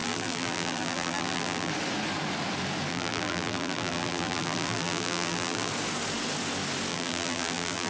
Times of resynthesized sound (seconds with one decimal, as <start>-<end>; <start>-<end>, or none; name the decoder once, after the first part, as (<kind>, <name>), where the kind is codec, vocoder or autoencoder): 0.0-1.7 (vocoder, BigVGAN v2); 2.9-5.7; 6.9-7.9